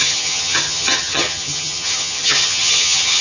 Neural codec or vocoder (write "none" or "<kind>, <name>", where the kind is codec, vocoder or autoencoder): vocoder, HiFi-GAN